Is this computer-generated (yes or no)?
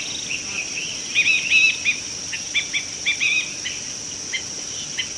no